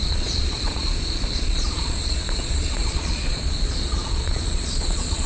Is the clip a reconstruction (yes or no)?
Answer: yes